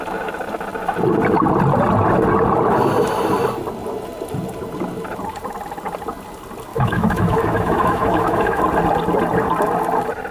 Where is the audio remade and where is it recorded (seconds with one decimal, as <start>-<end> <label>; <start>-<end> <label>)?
0.0-6.7 recorded; 6.7-8.6 remade; 8.6-10.3 recorded